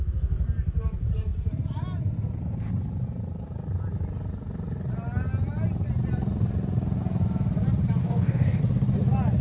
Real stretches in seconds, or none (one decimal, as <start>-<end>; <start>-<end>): 0.0-8.0; 8.6-9.4